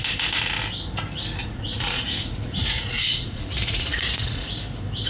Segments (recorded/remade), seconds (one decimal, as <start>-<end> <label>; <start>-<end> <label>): 0.0-1.4 recorded; 1.4-4.5 remade; 4.5-5.1 recorded